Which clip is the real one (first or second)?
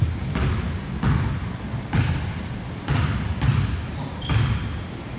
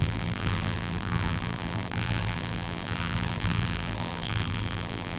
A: first